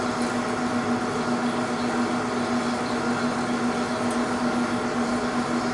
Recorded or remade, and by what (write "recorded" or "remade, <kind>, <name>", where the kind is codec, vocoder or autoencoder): recorded